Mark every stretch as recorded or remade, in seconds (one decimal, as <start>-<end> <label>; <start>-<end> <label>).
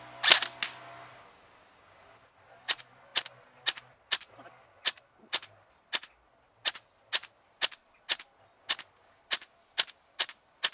0.0-10.7 recorded